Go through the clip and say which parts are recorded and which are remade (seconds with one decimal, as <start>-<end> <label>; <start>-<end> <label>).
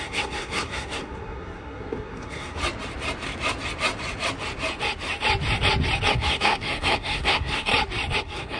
0.0-2.6 remade; 2.6-6.1 recorded; 6.1-7.7 remade; 7.7-8.2 recorded; 8.2-8.6 remade